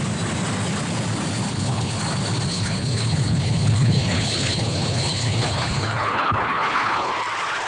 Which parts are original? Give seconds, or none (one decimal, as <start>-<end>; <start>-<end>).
0.0-1.5; 2.0-2.5; 7.1-7.7